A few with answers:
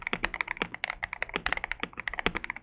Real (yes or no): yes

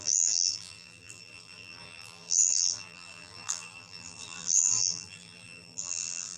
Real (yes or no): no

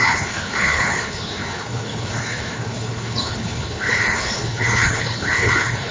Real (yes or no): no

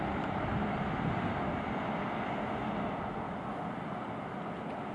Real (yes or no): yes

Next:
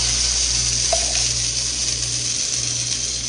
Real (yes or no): yes